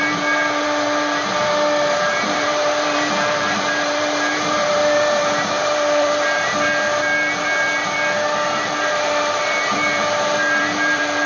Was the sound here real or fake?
fake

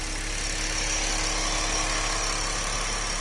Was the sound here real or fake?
real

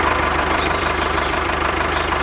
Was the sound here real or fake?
fake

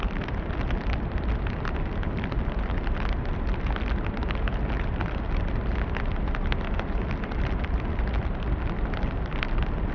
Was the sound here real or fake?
fake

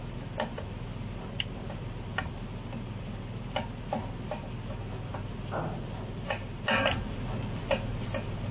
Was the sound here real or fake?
real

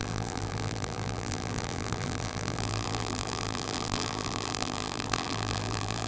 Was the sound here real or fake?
fake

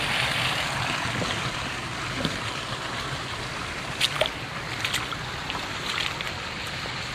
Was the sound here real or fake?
real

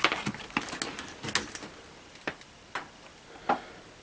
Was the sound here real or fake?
real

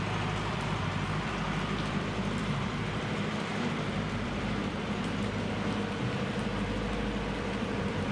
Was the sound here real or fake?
fake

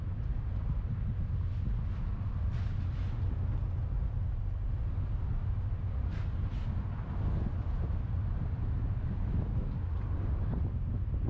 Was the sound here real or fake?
real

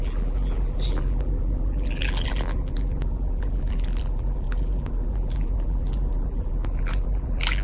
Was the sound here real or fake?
fake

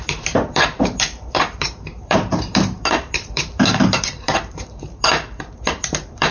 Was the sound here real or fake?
fake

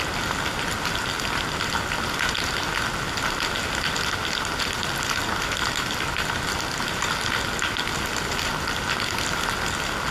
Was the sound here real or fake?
real